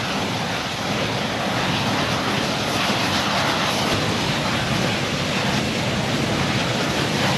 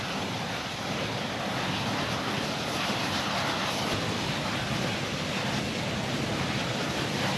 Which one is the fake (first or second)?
second